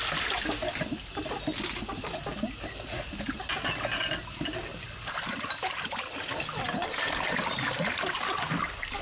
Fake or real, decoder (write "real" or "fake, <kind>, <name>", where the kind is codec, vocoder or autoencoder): real